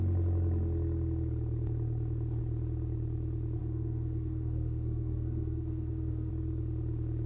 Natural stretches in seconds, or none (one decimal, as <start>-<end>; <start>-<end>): 0.0-3.6; 6.3-7.3